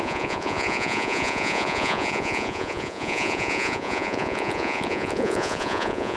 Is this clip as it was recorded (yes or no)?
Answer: no